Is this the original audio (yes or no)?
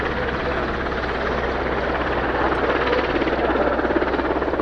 yes